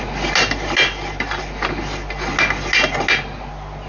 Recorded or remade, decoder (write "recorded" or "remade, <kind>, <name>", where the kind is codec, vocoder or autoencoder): recorded